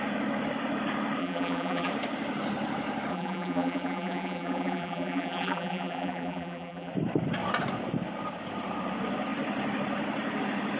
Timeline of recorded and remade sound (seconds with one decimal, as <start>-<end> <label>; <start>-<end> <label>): 0.0-1.2 recorded; 1.2-1.9 remade; 1.9-3.1 recorded; 3.1-6.9 remade; 6.9-10.8 recorded